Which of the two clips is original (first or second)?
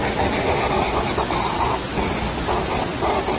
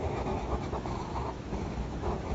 first